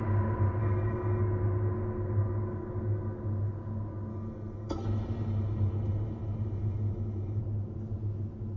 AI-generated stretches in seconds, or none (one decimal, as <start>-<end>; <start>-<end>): 0.6-1.2; 4.1-7.4